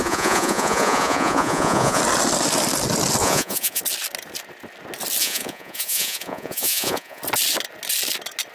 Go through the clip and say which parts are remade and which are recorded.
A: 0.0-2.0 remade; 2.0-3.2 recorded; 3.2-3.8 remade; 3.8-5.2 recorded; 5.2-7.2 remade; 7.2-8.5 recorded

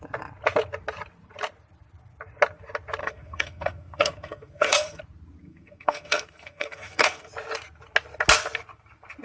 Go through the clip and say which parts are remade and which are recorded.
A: 0.0-3.0 recorded; 3.0-5.0 remade; 5.0-5.4 recorded; 5.4-7.3 remade; 7.3-9.2 recorded

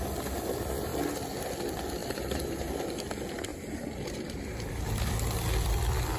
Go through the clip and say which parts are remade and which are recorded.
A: 0.0-2.0 recorded; 2.0-2.7 remade; 2.7-3.5 recorded; 3.5-4.9 remade; 4.9-6.2 recorded